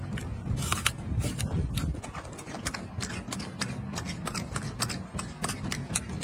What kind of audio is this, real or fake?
real